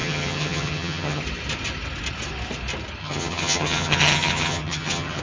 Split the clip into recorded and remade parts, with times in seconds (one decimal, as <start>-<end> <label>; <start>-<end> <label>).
0.0-1.2 remade; 1.2-3.0 recorded; 3.0-5.2 remade